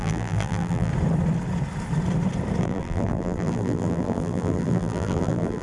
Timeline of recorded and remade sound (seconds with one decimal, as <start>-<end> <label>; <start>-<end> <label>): 0.0-0.9 remade; 0.9-2.6 recorded; 2.6-5.6 remade